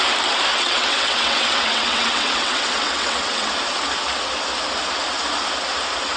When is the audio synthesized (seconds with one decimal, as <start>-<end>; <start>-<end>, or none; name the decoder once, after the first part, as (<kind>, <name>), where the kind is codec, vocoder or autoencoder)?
0.5-3.5 (vocoder, WaveNeXt)